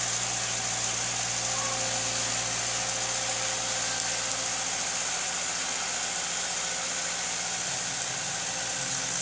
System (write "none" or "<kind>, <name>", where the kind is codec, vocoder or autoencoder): none